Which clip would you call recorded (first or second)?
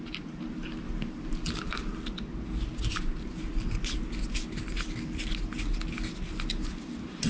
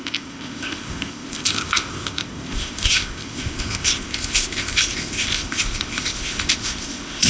first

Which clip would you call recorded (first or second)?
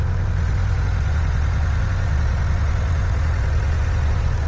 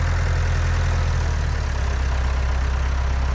second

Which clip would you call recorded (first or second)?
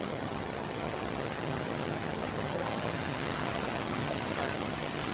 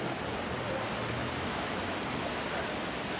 second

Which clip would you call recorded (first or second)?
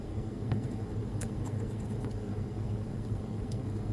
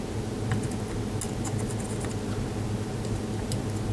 second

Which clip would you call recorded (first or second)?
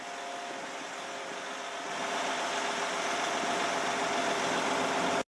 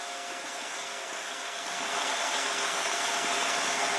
first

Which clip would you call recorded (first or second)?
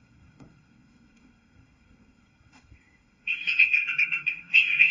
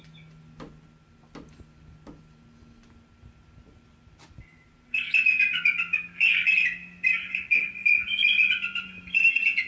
second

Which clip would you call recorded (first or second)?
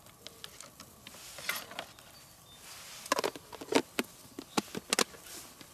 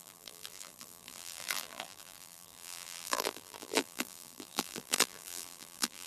first